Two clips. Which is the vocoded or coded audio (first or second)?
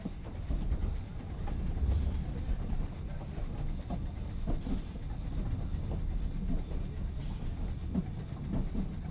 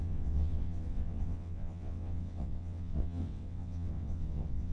second